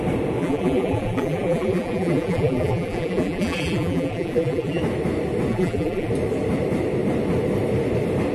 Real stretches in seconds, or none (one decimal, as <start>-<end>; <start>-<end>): 0.0-0.4; 4.8-5.5; 6.1-8.3